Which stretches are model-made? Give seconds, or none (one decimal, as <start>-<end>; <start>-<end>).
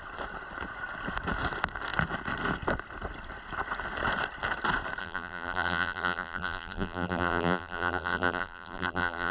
5.0-9.3